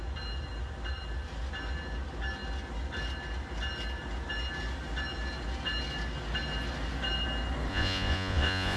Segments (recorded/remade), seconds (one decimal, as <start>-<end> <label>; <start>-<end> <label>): 0.0-7.7 recorded; 7.7-8.8 remade